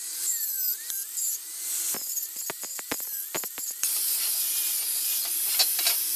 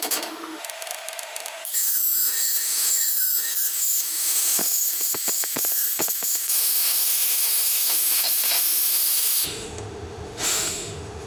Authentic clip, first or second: first